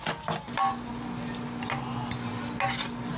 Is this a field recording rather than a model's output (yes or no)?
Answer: yes